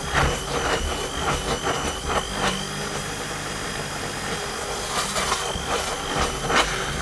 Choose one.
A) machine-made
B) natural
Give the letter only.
B